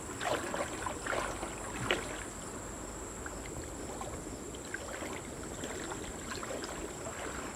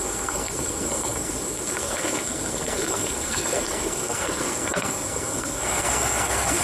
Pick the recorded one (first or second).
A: first